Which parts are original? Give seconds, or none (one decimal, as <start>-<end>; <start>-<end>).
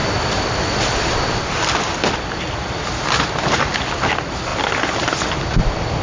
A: 0.0-6.0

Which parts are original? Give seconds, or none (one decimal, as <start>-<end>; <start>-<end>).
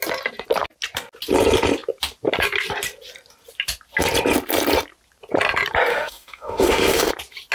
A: 0.0-5.9; 7.1-7.5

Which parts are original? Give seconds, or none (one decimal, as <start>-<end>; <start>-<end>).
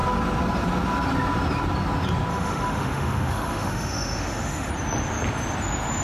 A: 0.0-2.3; 4.7-6.0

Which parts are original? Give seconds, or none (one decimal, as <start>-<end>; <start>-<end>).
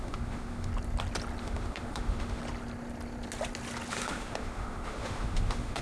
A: 0.7-1.4; 2.4-3.9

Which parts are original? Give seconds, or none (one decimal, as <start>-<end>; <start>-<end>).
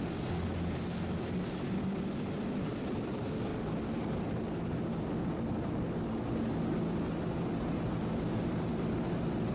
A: 0.0-9.5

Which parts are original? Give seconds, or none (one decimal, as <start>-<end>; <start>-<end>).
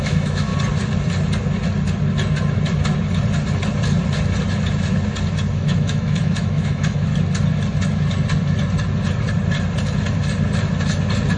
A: 0.5-5.5; 7.1-11.4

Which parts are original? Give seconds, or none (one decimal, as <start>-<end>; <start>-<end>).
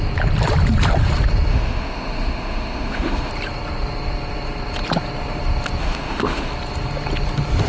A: 0.0-1.5; 3.3-5.8; 6.5-7.7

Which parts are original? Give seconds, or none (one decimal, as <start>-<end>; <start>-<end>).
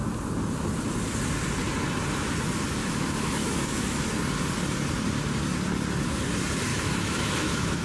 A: 0.0-2.8; 4.1-6.7